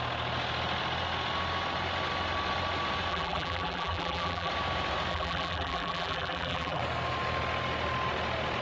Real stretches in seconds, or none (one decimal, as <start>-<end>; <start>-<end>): 0.0-3.1; 4.5-5.1; 6.8-8.6